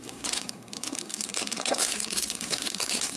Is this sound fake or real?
fake